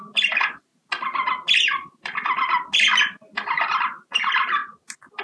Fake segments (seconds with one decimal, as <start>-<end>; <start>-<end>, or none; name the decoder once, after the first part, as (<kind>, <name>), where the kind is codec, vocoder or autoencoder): none